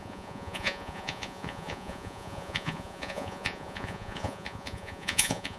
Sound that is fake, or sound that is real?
fake